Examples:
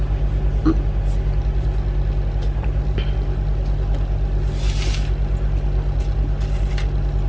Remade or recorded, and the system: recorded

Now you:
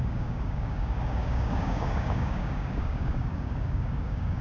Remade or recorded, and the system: remade, codec, DAC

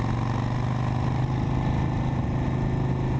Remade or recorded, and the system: recorded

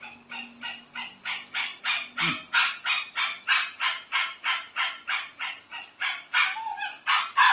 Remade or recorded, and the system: recorded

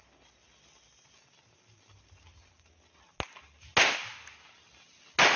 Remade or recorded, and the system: recorded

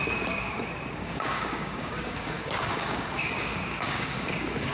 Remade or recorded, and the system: remade, codec, DAC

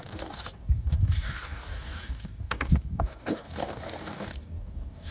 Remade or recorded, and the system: remade, codec, DAC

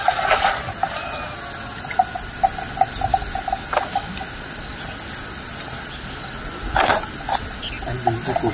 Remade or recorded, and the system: recorded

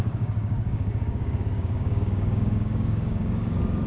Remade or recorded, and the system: remade, codec, DAC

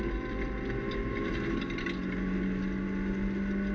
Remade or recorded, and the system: recorded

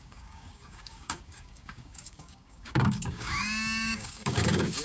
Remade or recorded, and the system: remade, codec, DAC